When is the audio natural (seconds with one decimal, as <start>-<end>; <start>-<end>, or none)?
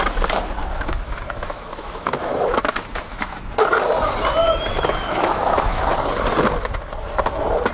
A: 0.0-0.6; 3.6-4.4; 5.8-7.7